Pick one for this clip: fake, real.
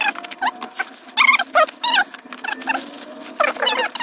real